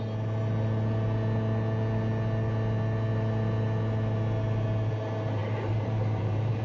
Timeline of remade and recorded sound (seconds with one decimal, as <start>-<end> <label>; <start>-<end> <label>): 0.0-5.4 recorded; 5.4-6.6 remade